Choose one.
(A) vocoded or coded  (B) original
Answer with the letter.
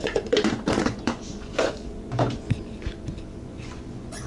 A